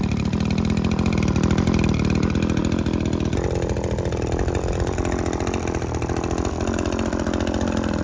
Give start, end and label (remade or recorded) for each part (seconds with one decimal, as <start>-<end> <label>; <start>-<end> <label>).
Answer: 0.0-8.0 recorded